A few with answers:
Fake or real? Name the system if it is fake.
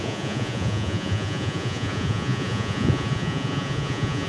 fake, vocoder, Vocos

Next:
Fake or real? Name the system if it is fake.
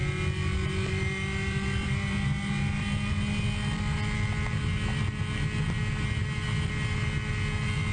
real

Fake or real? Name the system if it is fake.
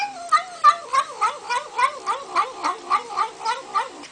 real